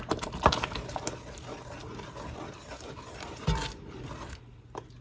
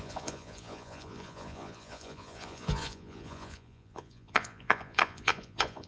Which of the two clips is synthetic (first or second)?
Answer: second